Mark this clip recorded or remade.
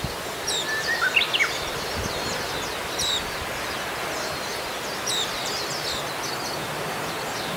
recorded